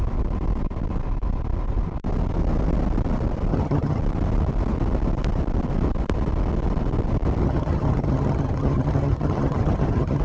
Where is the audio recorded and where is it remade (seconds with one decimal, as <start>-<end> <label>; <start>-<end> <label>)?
0.0-3.5 recorded; 3.5-4.0 remade; 4.0-7.4 recorded; 7.4-10.2 remade